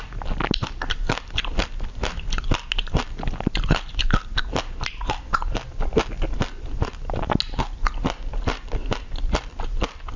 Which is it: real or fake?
real